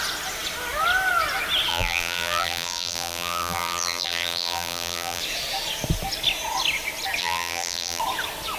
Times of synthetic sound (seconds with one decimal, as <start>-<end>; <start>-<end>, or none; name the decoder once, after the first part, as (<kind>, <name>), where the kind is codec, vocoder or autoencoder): 1.7-5.2 (vocoder, BigVGAN v2); 7.2-8.0

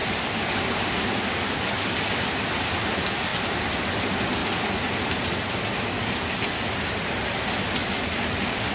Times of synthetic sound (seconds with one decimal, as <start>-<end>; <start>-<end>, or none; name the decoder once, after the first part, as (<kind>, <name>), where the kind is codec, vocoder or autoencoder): 0.0-0.9 (vocoder, BigVGAN v2); 3.3-3.9; 4.4-5.5

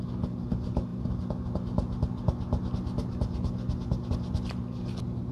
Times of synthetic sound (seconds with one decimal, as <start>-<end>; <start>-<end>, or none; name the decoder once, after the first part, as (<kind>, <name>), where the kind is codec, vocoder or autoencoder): none